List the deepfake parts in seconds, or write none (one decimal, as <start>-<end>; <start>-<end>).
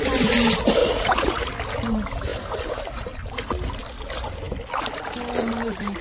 0.8-1.5